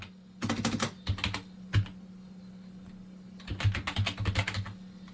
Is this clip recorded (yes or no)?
yes